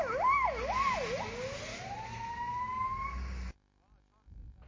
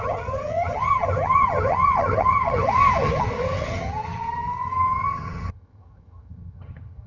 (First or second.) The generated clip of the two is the second